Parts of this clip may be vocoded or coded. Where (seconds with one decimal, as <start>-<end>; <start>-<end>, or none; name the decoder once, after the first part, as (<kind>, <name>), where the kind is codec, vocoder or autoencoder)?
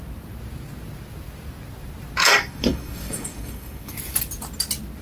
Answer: 2.2-3.9 (codec, DAC)